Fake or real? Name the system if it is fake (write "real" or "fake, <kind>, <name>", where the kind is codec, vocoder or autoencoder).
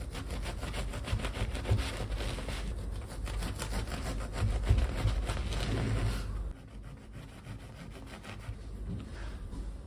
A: real